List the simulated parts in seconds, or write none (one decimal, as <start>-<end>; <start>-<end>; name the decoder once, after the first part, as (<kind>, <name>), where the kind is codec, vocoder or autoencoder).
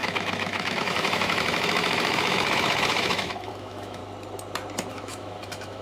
0.0-4.0 (autoencoder, DAC-VAE); 4.9-5.8